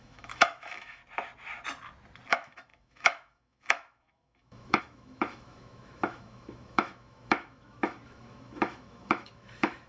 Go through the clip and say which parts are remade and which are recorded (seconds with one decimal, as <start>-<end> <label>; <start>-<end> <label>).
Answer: 0.0-1.0 remade; 1.0-2.3 recorded; 2.3-9.9 remade